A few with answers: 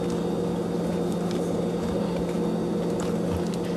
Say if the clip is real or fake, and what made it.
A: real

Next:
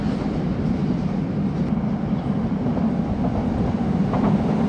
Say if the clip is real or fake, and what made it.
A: real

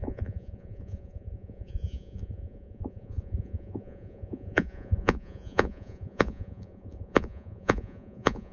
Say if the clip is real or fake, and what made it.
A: fake, vocoder, Vocos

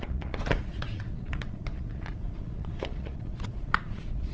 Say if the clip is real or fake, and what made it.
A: fake, vocoder, Vocos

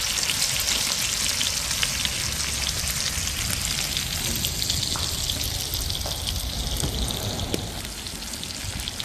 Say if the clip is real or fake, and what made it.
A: real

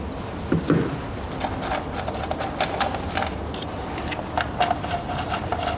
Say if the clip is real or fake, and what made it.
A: real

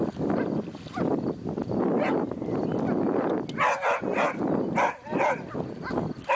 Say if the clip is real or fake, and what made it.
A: real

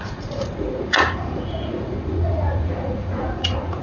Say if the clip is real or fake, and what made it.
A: fake, vocoder, Vocos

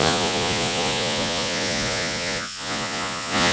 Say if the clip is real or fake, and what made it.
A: fake, vocoder, Vocos